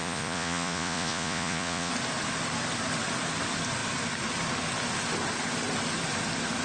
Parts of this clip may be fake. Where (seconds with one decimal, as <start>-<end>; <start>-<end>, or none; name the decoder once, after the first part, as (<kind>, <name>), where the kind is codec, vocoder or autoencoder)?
0.0-1.9 (vocoder, Vocos)